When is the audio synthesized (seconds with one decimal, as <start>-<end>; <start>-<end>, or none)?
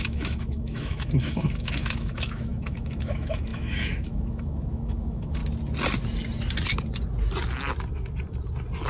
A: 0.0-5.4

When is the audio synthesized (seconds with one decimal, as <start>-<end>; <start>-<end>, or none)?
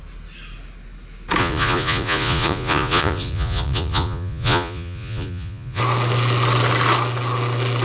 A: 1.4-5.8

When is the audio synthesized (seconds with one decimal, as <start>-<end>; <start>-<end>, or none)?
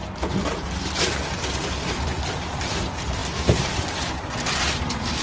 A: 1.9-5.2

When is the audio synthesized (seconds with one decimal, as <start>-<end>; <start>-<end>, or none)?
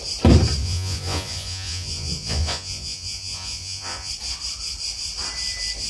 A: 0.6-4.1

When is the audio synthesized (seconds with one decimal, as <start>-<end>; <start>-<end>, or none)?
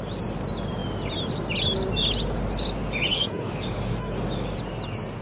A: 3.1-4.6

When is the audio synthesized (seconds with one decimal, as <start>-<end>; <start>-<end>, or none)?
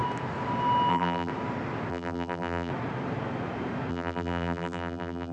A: 0.9-1.3; 1.9-2.7; 3.9-5.3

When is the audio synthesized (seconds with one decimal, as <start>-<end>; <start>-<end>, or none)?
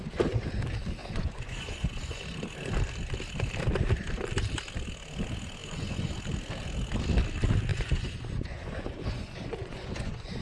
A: 1.0-2.2; 5.6-6.1; 7.7-10.4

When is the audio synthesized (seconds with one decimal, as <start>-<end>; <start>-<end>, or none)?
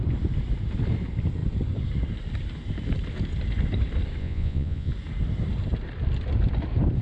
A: 4.2-4.9